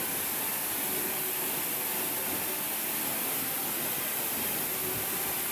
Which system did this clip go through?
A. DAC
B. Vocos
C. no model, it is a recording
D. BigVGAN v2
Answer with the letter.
C